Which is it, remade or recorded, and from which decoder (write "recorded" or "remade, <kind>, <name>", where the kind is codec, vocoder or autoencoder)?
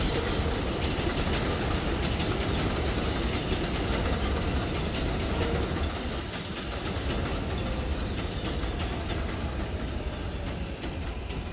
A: recorded